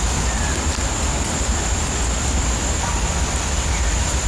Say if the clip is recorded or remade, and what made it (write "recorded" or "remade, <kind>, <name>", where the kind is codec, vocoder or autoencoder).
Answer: recorded